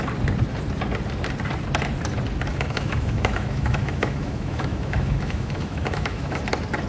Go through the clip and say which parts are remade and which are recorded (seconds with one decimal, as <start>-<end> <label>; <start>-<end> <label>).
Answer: 0.0-2.5 recorded; 2.5-6.4 remade; 6.4-6.9 recorded